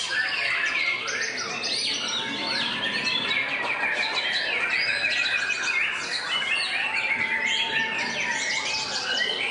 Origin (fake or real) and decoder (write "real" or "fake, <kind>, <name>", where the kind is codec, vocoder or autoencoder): real